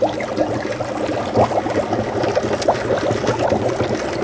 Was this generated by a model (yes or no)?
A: no